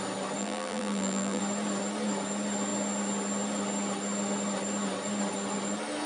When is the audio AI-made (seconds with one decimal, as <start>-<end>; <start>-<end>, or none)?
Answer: 0.4-1.4